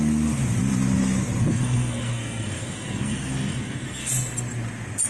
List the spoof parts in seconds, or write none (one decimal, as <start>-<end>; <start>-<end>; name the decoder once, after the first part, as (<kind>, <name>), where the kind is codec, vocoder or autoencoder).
1.4-4.1 (codec, SNAC)

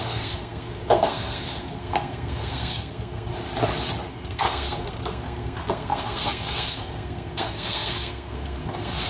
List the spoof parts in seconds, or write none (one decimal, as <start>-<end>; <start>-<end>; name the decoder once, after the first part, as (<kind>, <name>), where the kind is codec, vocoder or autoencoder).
0.0-3.3 (codec, SNAC); 4.1-9.1